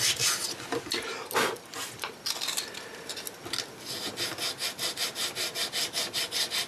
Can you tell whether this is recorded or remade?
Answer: recorded